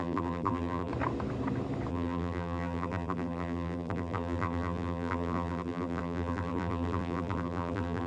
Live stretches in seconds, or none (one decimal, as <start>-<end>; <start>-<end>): 0.9-1.9